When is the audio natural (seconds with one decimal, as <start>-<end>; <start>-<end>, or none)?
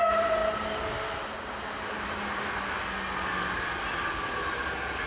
0.0-5.1